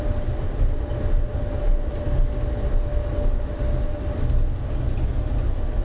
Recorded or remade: recorded